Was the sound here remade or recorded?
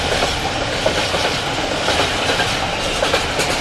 recorded